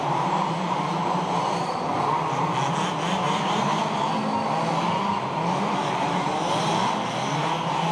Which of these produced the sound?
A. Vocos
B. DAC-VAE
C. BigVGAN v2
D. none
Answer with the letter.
D